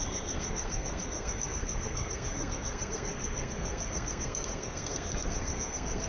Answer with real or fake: fake